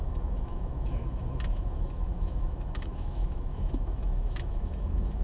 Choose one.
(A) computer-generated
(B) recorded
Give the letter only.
A